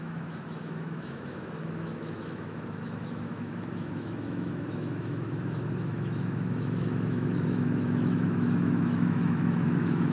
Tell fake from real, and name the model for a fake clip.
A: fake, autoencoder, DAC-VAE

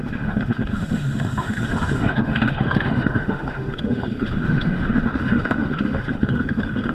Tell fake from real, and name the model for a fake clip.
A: fake, autoencoder, DAC-VAE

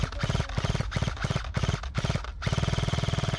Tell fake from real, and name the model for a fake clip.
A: real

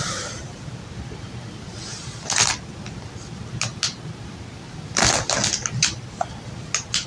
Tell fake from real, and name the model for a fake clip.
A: real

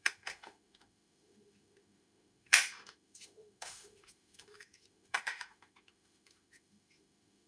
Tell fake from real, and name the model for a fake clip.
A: fake, autoencoder, DAC-VAE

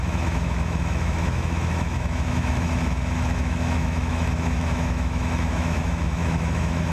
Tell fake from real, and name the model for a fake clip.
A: fake, autoencoder, DAC-VAE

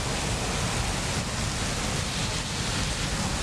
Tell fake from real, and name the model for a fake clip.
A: real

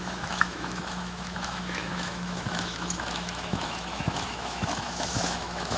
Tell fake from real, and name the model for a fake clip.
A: fake, autoencoder, DAC-VAE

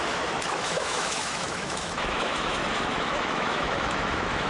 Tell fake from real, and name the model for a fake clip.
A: fake, autoencoder, DAC-VAE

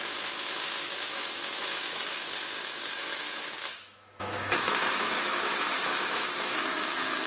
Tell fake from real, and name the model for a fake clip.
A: fake, autoencoder, DAC-VAE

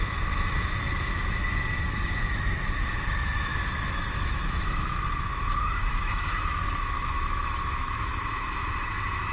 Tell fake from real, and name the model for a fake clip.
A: fake, autoencoder, DAC-VAE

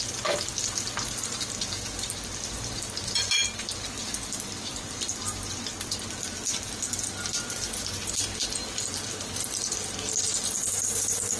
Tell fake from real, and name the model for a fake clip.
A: real